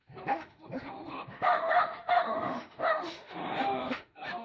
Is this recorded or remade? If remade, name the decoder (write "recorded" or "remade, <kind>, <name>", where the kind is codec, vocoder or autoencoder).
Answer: remade, autoencoder, DAC-VAE